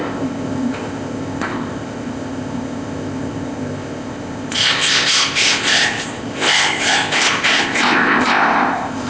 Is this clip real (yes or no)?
no